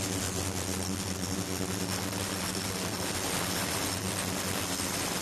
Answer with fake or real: real